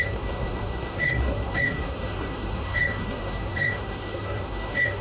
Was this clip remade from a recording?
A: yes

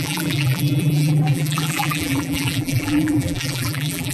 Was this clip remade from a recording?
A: yes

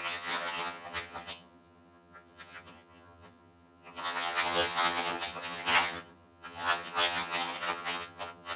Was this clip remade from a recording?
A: yes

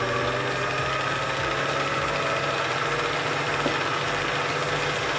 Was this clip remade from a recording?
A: no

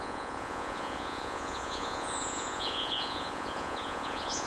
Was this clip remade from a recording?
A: yes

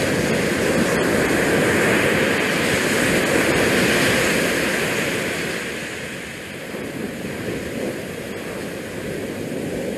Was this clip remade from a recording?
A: no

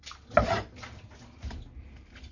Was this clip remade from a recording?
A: no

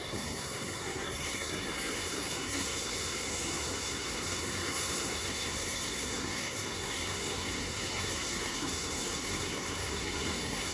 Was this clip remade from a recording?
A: yes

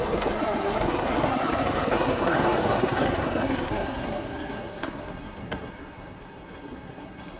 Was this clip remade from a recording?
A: yes